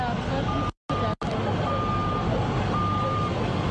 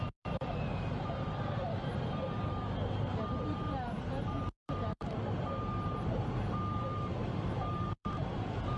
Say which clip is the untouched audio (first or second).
first